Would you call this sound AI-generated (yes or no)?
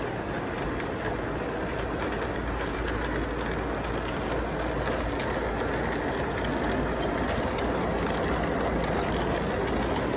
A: no